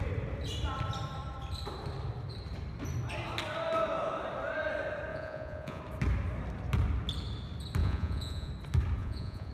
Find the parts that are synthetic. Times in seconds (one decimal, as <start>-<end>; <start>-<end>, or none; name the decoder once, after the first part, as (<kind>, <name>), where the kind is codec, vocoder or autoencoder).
5.1-5.8 (vocoder, Vocos); 7.8-8.5; 9.0-9.5